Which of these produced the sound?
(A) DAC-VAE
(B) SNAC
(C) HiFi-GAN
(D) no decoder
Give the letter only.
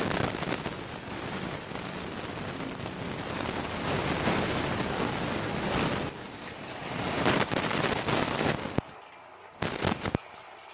D